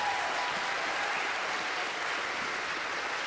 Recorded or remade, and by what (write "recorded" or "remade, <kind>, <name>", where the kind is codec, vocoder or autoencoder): recorded